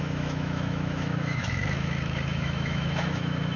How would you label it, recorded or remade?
remade